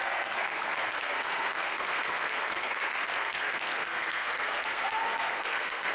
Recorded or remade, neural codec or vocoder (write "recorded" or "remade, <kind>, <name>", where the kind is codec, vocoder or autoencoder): remade, codec, SNAC